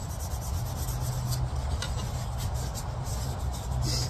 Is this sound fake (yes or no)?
no